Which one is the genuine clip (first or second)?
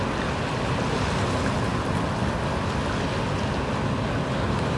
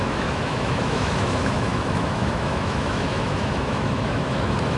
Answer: first